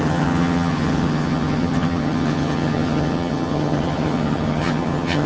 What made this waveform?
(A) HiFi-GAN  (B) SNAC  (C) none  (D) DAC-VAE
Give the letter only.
A